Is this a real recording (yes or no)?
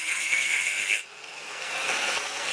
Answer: no